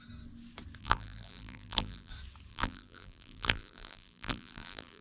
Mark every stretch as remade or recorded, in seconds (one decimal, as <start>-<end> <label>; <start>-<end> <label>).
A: 0.0-0.8 recorded; 0.8-2.1 remade; 2.1-2.5 recorded; 2.5-5.0 remade